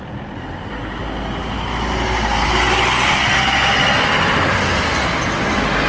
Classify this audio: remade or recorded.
recorded